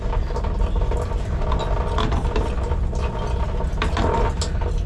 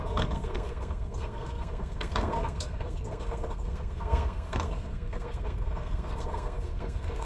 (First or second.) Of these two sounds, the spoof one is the second